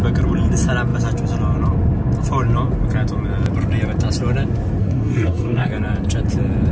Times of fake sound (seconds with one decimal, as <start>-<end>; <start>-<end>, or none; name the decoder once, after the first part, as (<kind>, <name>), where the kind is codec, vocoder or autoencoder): 4.8-5.7 (codec, SNAC)